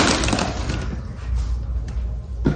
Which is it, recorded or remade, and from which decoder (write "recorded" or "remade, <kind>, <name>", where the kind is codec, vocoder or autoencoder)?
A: recorded